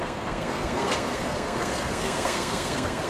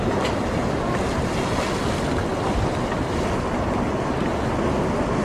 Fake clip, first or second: first